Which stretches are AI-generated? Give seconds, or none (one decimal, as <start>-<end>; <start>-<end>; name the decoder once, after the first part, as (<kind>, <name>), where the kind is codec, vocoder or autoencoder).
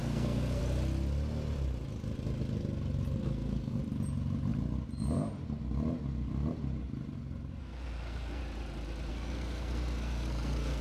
0.0-0.6 (codec, SNAC); 3.2-3.8; 7.6-8.4; 9.1-10.8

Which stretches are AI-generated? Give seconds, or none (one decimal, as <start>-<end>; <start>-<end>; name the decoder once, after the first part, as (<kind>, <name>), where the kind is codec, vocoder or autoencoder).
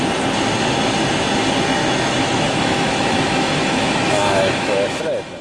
1.8-5.0 (autoencoder, DAC-VAE)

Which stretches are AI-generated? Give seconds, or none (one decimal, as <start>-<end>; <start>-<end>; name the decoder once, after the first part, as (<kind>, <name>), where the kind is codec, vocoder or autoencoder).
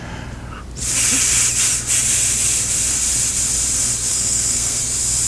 4.1-4.8 (codec, SNAC)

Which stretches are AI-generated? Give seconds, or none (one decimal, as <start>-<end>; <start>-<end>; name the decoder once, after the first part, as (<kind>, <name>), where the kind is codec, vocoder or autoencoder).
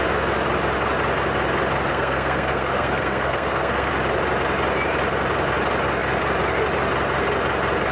1.9-3.9 (codec, SNAC)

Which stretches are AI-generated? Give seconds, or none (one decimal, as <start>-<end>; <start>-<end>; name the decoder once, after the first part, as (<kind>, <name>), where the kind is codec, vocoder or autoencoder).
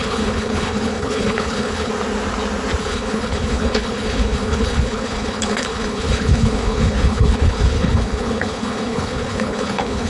0.0-1.9 (codec, HILCodec); 2.8-10.1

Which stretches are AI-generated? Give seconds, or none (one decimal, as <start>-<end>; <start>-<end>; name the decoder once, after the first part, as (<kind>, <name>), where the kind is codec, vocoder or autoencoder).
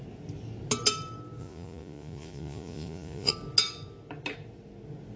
1.4-3.3 (vocoder, Vocos)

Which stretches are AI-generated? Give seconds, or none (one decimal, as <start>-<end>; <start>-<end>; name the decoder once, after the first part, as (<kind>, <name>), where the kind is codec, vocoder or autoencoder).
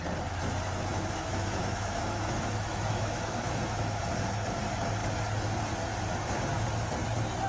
0.9-4.0 (autoencoder, DAC-VAE)